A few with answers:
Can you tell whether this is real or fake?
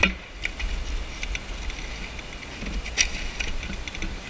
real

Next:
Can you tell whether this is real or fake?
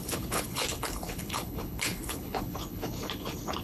fake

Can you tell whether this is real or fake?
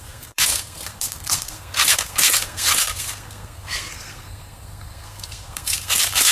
fake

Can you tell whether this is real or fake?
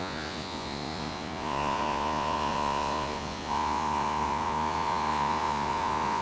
fake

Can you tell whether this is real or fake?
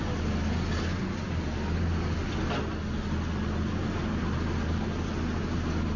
real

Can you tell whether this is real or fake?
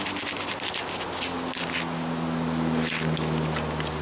real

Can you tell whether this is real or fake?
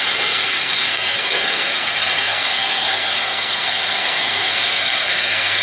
fake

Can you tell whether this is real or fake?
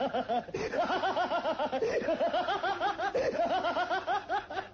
real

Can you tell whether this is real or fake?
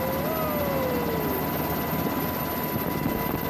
real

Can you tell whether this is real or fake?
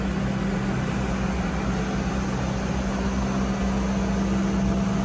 real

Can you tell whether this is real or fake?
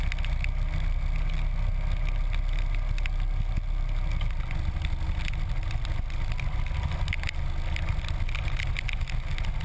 real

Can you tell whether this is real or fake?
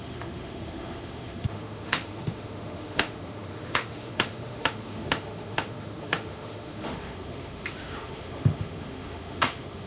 fake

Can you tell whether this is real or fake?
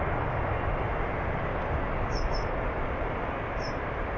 real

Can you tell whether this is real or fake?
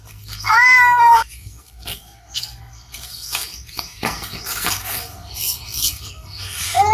fake